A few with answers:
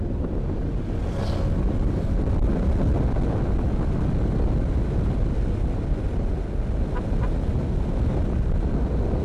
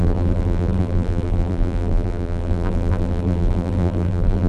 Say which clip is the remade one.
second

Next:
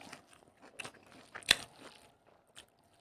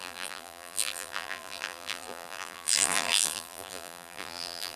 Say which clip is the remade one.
second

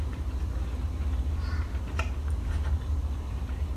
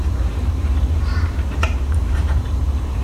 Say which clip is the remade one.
second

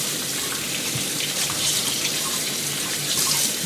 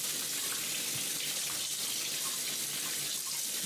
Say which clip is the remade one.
first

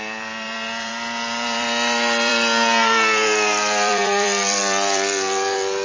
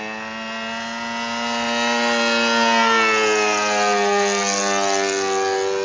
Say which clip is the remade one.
first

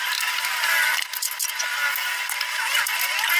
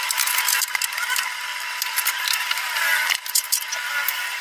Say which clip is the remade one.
second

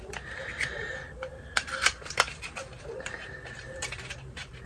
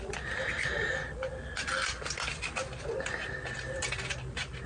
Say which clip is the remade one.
first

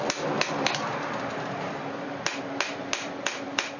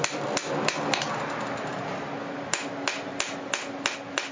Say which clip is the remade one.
first